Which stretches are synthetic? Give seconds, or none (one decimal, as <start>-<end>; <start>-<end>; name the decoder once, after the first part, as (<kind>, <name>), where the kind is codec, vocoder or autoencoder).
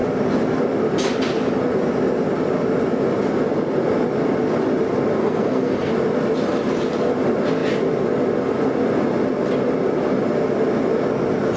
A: 5.2-5.9 (codec, SNAC)